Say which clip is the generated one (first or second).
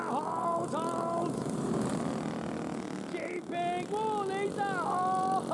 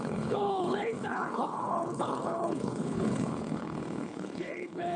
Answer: second